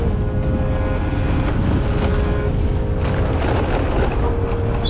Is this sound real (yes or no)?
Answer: yes